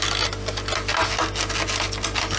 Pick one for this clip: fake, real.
real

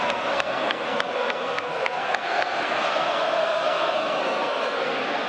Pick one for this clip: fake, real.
fake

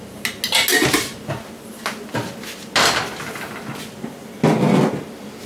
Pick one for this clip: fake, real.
real